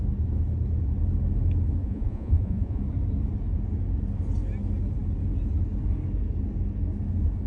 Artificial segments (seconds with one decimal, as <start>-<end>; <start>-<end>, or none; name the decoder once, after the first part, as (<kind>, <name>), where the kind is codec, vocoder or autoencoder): 1.8-2.8 (vocoder, Vocos)